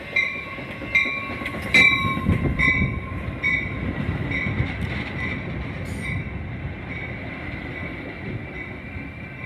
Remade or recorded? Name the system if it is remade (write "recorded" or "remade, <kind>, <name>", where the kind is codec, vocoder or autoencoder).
recorded